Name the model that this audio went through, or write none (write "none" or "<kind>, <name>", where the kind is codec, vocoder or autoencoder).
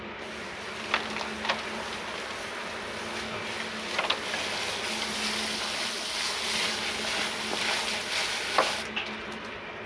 none